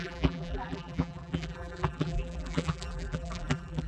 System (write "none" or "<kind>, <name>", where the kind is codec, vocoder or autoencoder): vocoder, BigVGAN v2